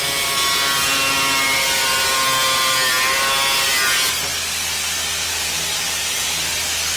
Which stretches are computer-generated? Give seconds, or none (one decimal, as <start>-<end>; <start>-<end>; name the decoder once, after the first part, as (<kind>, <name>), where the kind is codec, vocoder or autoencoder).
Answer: none